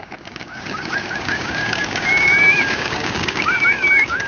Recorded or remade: remade